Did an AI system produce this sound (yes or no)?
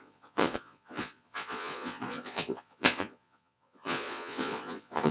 yes